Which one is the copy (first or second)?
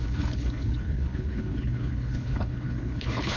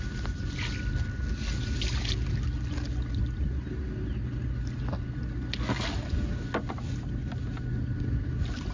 first